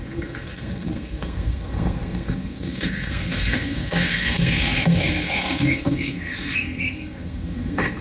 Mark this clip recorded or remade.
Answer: remade